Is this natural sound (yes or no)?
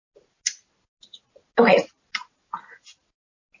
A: yes